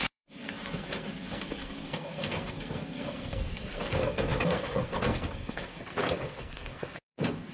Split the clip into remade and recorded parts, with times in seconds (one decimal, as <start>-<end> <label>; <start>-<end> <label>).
0.0-7.5 remade